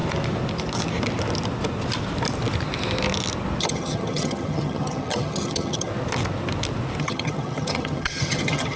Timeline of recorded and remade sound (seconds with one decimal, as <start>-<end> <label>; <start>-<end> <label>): 0.0-3.6 recorded; 3.6-5.9 remade; 5.9-7.0 recorded; 7.0-8.8 remade